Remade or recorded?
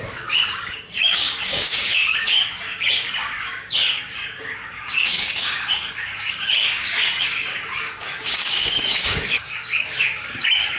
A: remade